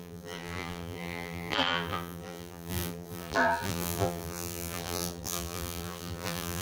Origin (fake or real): fake